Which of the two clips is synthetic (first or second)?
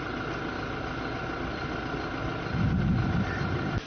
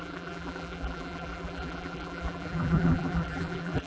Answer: second